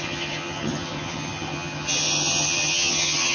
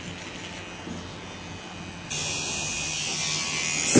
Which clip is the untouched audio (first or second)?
second